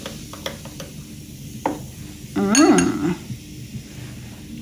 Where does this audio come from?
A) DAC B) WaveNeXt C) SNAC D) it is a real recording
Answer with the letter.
D